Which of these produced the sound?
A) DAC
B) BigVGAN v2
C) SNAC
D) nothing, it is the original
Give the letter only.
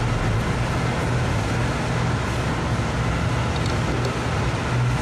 D